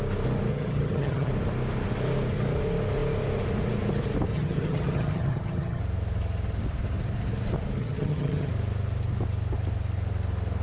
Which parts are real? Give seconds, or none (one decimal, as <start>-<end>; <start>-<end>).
0.0-0.5; 1.3-4.3; 5.8-7.8; 8.5-10.6